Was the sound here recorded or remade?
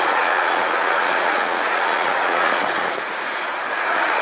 remade